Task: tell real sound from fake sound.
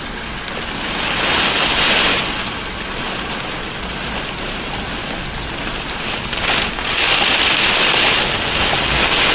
real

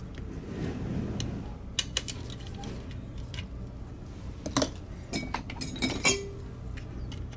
real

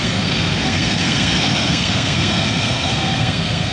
fake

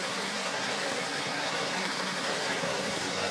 fake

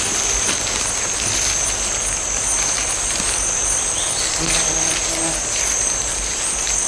real